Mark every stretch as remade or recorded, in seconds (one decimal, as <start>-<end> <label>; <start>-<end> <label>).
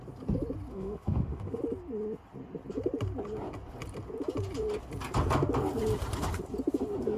0.0-0.7 recorded; 0.7-1.6 remade; 1.6-7.2 recorded